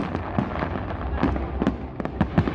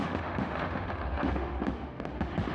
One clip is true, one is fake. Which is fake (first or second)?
second